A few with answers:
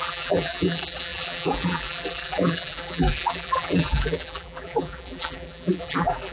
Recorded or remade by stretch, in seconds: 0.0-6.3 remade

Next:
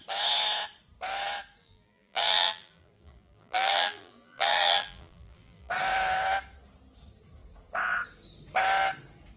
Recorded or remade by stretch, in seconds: 0.0-1.6 recorded; 1.6-5.7 remade; 5.7-9.4 recorded